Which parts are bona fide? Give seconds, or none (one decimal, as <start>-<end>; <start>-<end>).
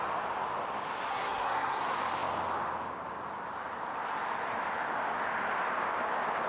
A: 0.0-1.1; 1.8-6.5